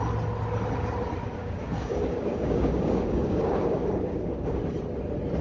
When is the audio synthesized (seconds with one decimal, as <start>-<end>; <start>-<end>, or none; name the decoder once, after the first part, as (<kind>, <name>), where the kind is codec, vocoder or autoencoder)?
1.4-4.6 (codec, DAC)